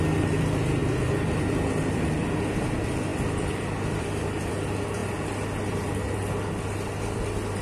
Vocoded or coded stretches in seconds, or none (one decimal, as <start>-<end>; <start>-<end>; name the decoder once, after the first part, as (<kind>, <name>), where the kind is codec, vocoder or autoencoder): 0.8-2.3 (vocoder, BigVGAN v2); 3.1-4.5